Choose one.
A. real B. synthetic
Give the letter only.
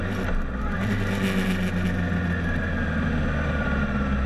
A